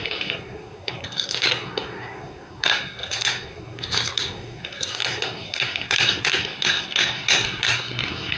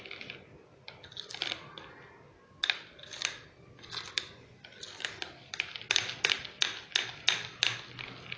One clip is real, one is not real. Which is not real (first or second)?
first